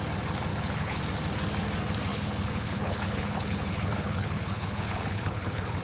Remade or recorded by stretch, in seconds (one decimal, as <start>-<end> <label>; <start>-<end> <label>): 0.0-0.5 recorded; 0.5-1.0 remade; 1.0-2.1 recorded; 2.1-5.8 remade